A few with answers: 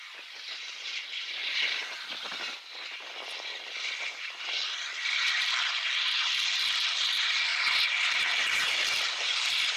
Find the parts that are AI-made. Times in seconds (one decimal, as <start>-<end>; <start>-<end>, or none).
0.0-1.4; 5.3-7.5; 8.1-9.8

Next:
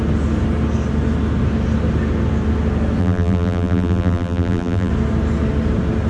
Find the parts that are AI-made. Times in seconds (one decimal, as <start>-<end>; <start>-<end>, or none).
3.0-4.9

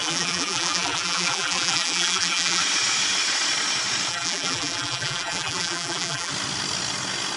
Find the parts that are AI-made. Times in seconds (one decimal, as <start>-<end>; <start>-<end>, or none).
0.0-2.6; 4.1-6.3